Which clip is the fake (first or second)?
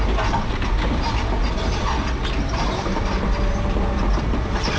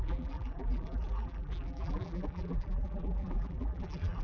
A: second